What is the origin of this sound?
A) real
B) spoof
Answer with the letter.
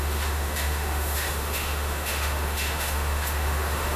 B